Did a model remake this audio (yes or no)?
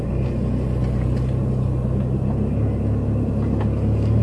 no